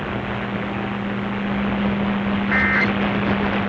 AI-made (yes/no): no